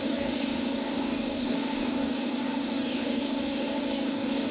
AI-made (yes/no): yes